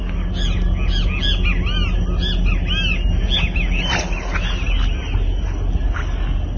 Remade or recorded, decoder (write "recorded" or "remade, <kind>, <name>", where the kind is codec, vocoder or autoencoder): recorded